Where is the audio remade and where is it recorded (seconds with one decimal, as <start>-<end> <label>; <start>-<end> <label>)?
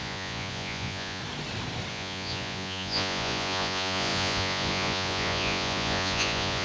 0.0-1.2 remade; 1.2-1.9 recorded; 1.9-6.6 remade